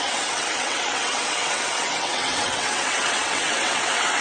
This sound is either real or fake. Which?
fake